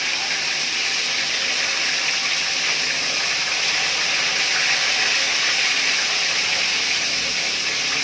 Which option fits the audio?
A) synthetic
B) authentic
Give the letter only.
B